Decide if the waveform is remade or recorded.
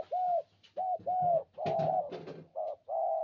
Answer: recorded